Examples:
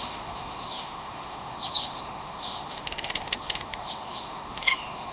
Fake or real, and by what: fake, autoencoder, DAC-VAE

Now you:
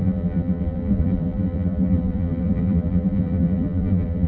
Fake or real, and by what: fake, vocoder, BigVGAN v2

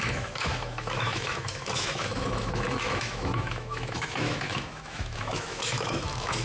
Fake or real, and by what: fake, autoencoder, DAC-VAE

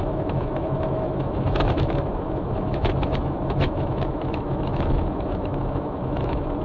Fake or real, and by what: fake, autoencoder, DAC-VAE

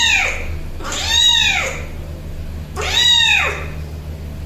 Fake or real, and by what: real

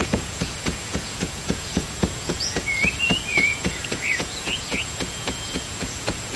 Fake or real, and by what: fake, vocoder, Vocos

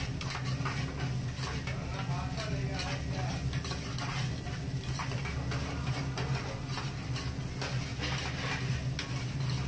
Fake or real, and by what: real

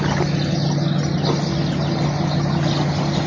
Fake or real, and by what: real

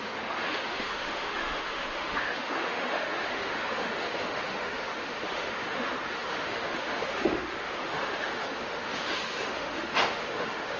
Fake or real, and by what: fake, autoencoder, DAC-VAE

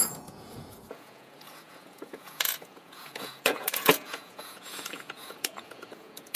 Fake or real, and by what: fake, vocoder, Vocos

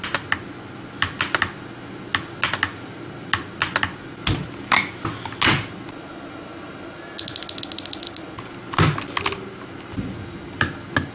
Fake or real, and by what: real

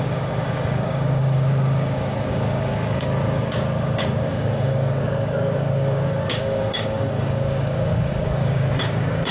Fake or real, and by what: fake, codec, DAC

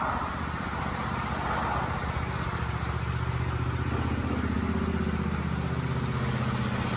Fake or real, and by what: real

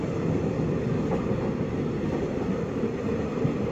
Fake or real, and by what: real